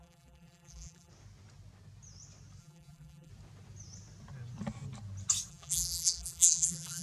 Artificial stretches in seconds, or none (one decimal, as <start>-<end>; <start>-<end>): 0.0-1.1; 2.6-3.3; 5.5-7.0